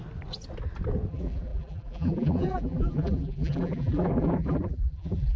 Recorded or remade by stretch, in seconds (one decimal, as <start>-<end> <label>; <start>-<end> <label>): 0.0-1.1 recorded; 1.1-5.4 remade